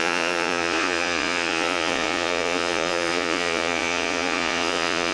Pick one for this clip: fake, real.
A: fake